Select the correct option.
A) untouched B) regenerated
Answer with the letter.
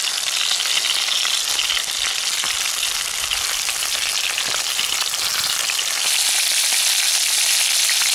A